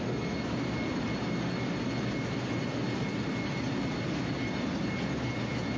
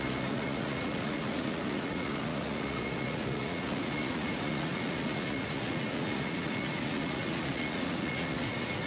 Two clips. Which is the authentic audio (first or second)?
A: first